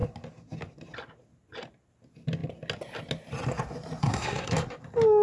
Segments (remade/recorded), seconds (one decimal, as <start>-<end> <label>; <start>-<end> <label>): 0.0-4.0 recorded; 4.0-4.5 remade; 4.5-5.2 recorded